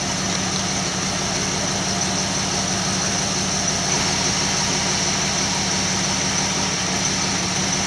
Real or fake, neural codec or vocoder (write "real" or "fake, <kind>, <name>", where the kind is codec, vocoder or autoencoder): real